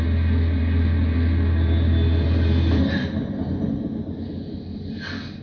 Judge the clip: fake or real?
real